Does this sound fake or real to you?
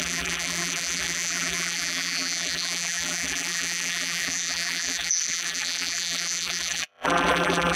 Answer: fake